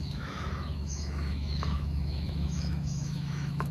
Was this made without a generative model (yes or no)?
no